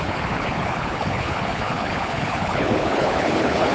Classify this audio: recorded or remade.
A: remade